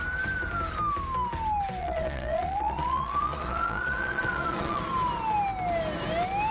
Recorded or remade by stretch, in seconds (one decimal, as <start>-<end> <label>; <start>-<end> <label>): 0.0-1.8 recorded; 1.8-4.8 remade; 4.8-6.5 recorded